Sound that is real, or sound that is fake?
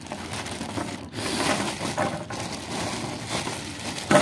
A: real